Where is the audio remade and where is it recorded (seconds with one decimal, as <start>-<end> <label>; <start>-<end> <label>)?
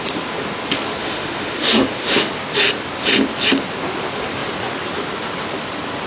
0.0-1.0 recorded; 1.0-2.3 remade; 2.3-6.1 recorded